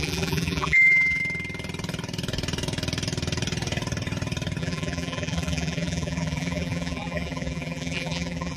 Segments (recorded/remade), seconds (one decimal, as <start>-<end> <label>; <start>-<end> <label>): 0.0-1.2 remade; 1.2-4.6 recorded; 4.6-8.6 remade